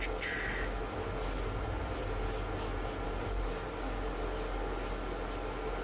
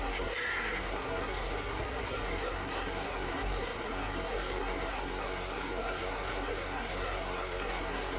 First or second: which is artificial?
second